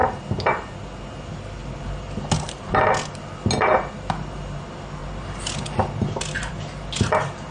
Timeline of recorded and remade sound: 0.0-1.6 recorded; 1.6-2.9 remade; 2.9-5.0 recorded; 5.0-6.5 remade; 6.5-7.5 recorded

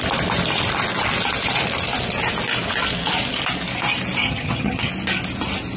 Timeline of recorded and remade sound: 0.0-4.2 recorded; 4.2-4.9 remade; 4.9-5.8 recorded

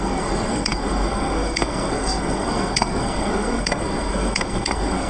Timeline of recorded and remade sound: 0.0-5.1 remade

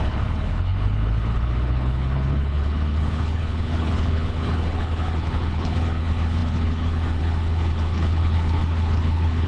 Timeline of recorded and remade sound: 0.0-9.5 remade